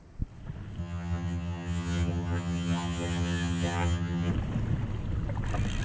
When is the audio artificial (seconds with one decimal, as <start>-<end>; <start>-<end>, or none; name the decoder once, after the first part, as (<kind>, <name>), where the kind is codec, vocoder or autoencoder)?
0.8-4.3 (vocoder, HiFi-GAN)